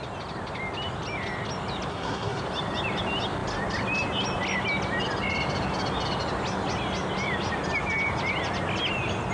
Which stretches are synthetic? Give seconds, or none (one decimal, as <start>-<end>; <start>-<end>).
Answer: 1.9-2.4